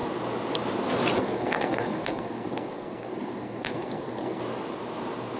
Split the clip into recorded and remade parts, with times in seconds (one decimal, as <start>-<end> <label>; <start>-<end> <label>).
0.0-1.2 recorded; 1.2-4.4 remade; 4.4-5.4 recorded